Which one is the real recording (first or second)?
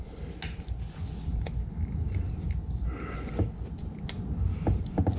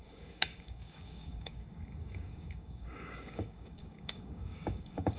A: first